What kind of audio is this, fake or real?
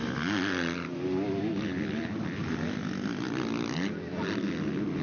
real